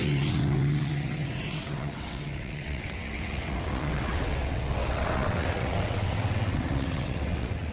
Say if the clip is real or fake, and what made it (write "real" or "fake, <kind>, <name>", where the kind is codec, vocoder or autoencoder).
fake, vocoder, WaveNeXt